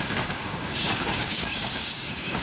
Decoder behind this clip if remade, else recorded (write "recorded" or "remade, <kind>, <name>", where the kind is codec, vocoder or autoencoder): remade, codec, DAC